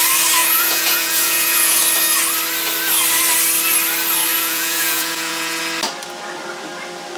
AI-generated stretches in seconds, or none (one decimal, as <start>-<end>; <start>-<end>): 0.4-1.8; 4.3-5.6